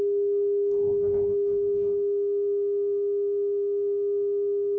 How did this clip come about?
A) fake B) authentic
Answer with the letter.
A